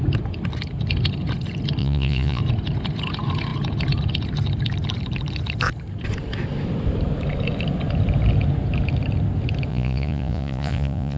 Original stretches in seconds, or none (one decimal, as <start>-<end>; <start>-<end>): 0.0-1.8; 2.4-9.7